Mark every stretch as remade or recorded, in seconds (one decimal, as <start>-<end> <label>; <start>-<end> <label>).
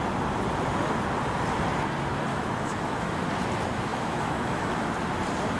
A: 0.0-2.3 recorded; 2.3-3.2 remade; 3.2-3.9 recorded; 3.9-4.9 remade; 4.9-5.6 recorded